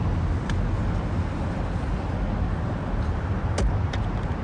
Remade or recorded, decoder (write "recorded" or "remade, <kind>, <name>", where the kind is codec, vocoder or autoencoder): recorded